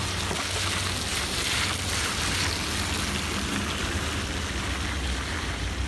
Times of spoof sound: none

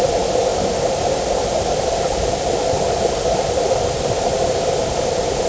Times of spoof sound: none

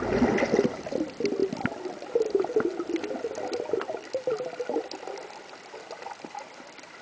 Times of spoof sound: none

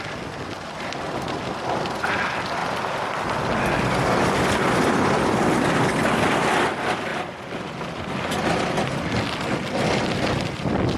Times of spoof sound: none

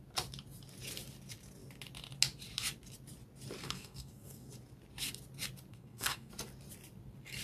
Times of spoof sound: 3.6-4.5 (codec, SNAC); 5.7-6.3